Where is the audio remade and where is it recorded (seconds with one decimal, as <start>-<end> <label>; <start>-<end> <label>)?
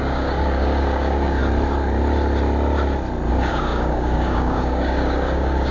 0.0-1.4 remade; 1.4-3.3 recorded; 3.3-5.7 remade